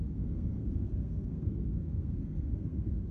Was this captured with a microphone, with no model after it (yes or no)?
no